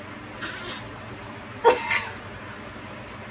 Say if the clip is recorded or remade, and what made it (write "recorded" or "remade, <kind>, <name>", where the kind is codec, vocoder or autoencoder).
recorded